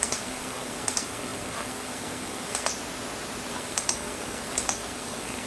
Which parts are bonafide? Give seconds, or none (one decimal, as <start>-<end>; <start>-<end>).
2.7-3.5